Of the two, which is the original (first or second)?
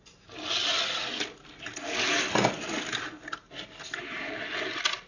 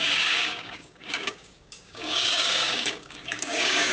first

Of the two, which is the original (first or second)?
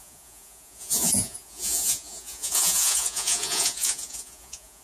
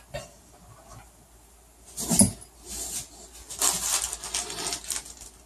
second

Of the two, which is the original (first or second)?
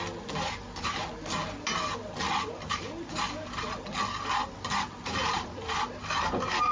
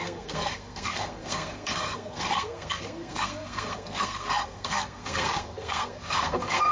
first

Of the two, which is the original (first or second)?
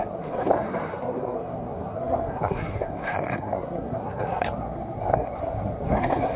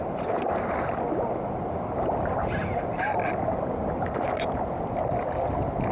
second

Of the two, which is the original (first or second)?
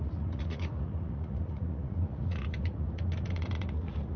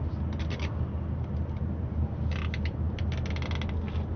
second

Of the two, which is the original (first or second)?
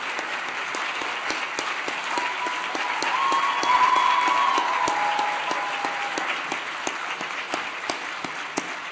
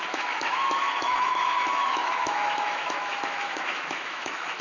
first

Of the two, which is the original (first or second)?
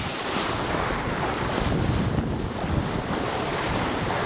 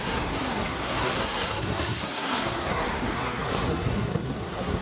first